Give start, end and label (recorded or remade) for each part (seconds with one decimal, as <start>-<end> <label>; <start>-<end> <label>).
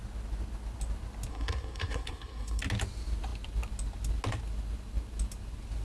0.0-1.3 recorded; 1.3-2.6 remade; 2.6-5.8 recorded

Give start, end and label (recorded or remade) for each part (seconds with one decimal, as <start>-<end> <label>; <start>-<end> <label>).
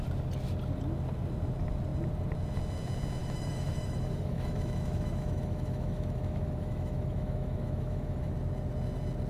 0.0-3.2 recorded; 3.2-8.3 remade; 8.3-9.3 recorded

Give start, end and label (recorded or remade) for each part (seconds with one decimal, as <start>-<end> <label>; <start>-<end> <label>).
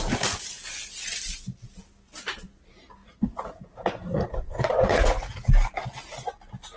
0.0-3.0 recorded; 3.0-5.5 remade; 5.5-6.8 recorded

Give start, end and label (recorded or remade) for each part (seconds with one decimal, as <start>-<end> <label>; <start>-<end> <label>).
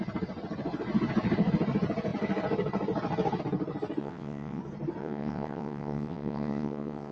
0.0-4.0 recorded; 4.0-4.6 remade; 4.6-5.0 recorded; 5.0-7.1 remade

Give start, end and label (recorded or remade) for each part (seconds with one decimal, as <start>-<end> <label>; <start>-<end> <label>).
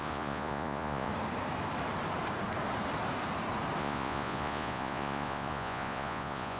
0.0-1.1 remade; 1.1-3.8 recorded; 3.8-6.6 remade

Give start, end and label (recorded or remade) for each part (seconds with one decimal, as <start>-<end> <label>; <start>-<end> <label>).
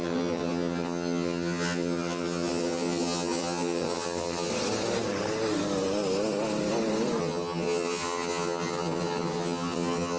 0.0-4.5 remade; 4.5-7.2 recorded; 7.2-10.2 remade